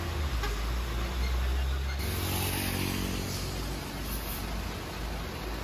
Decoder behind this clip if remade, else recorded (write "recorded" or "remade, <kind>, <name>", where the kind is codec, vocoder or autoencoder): recorded